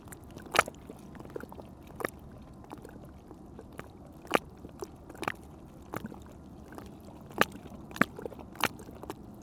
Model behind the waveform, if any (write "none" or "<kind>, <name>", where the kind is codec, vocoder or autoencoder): none